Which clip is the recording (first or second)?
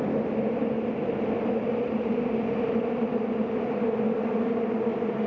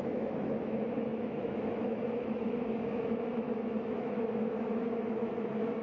first